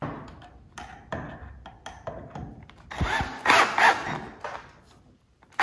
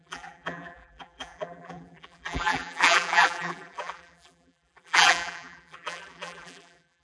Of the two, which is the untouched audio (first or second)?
first